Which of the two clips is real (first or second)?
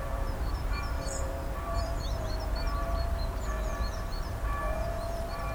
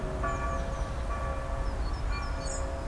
second